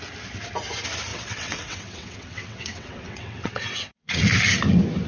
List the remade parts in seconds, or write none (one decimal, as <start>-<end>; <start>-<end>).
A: 1.1-4.2